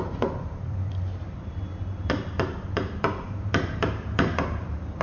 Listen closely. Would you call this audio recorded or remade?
remade